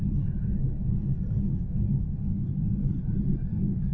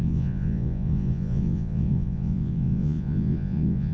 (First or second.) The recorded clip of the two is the first